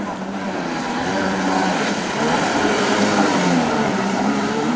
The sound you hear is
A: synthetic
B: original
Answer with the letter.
A